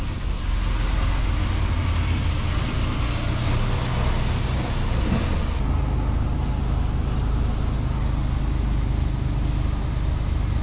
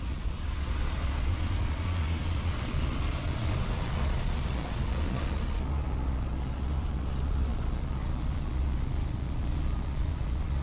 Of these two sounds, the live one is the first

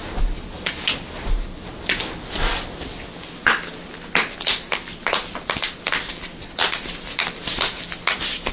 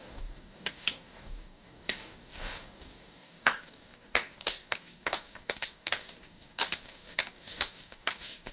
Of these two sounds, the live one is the first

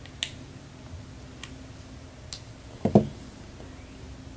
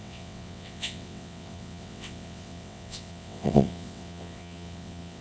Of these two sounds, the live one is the first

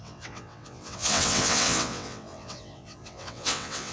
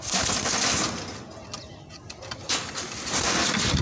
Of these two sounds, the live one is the second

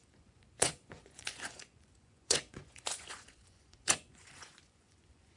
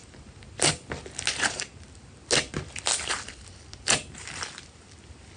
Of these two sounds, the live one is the second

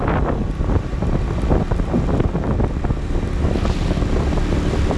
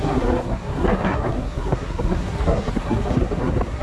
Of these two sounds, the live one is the first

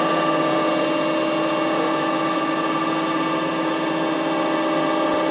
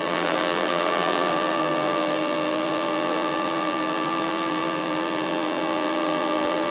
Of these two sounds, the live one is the first